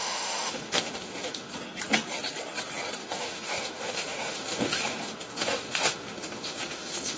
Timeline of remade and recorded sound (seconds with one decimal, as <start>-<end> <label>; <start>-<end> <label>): 0.0-1.5 remade; 1.5-3.0 recorded; 3.0-7.2 remade